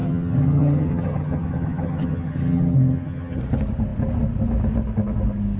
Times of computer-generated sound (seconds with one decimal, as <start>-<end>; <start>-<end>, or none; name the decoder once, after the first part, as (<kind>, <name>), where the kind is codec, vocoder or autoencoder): 0.0-3.4 (vocoder, HiFi-GAN)